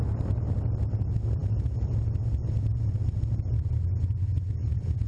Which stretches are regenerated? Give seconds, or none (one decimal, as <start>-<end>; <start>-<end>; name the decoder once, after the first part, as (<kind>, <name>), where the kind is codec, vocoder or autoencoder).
none

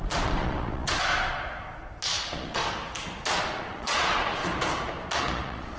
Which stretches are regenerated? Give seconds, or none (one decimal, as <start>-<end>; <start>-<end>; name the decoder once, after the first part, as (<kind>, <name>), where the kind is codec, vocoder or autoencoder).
0.0-1.0 (vocoder, Vocos); 2.2-2.6; 3.4-4.4; 5.2-5.8

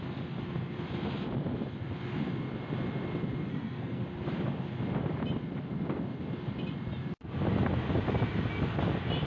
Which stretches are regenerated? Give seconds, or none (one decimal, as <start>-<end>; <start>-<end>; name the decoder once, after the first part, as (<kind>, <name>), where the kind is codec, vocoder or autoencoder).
3.5-4.0 (codec, SNAC)

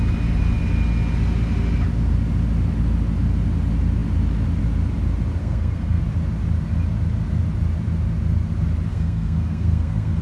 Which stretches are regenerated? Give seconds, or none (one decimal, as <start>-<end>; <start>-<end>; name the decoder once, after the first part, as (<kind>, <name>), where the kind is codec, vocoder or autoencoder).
5.4-6.0 (codec, SNAC); 8.9-10.2

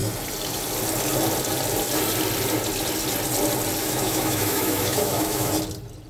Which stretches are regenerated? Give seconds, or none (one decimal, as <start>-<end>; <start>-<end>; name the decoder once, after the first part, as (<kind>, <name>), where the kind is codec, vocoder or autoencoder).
3.8-5.5 (autoencoder, DAC-VAE)

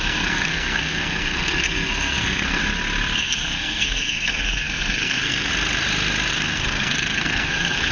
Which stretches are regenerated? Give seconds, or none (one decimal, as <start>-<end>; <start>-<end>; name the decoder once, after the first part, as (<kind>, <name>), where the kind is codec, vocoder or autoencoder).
0.0-2.6 (codec, SNAC); 3.2-5.5; 6.3-7.9

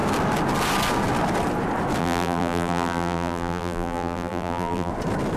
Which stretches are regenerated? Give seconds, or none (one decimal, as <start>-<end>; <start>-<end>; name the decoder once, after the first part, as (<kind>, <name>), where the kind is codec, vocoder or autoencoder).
2.0-4.9 (vocoder, BigVGAN v2)

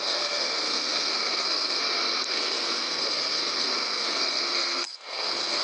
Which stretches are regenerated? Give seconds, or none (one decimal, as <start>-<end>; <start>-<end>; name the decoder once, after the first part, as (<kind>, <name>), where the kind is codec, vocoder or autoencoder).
0.0-1.8 (codec, SNAC); 2.3-5.6